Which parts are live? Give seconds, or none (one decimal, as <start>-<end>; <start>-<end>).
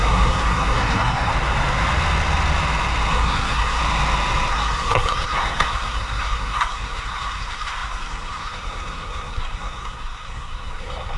1.3-3.1; 3.8-4.5